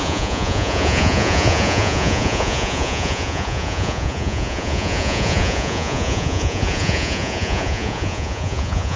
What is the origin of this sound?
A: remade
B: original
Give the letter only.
A